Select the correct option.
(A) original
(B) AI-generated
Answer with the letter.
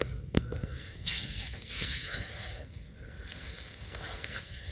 B